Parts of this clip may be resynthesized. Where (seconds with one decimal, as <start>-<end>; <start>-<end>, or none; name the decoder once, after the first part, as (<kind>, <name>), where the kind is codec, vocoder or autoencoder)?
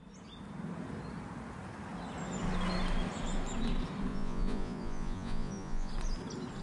4.1-5.9 (vocoder, Vocos)